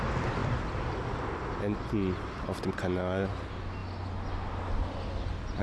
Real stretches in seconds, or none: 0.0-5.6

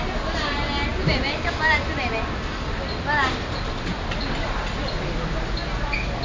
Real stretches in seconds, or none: 0.0-6.2

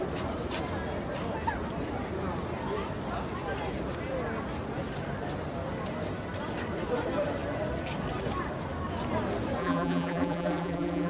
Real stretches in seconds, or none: 0.0-9.6

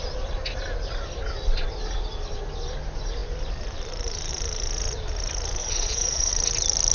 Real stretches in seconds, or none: 0.0-5.6; 6.3-6.9

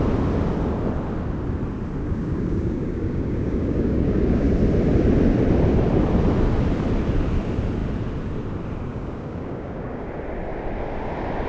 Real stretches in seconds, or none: 0.0-2.0; 4.5-8.9; 10.1-11.5

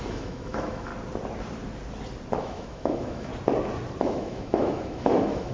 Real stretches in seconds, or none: 0.9-2.4; 3.3-4.0

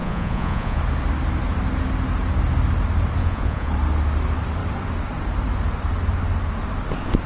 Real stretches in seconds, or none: 0.8-3.2; 3.7-7.3

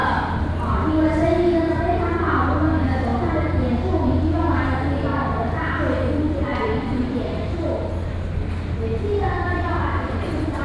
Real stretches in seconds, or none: 0.5-6.5